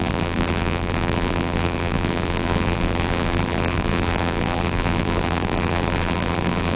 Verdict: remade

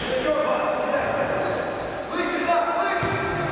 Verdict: recorded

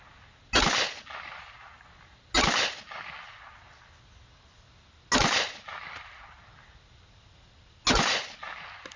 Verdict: recorded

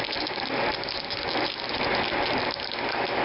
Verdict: recorded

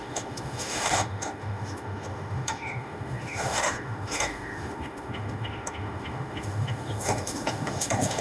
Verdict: remade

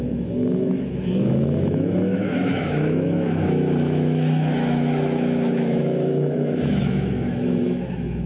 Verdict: remade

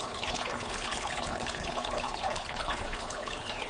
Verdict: remade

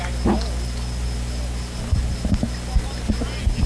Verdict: recorded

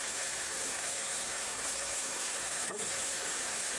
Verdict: remade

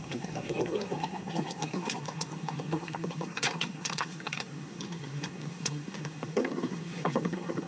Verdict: remade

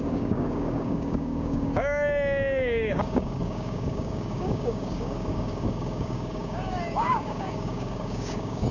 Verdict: remade